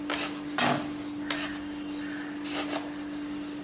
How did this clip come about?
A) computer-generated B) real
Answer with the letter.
B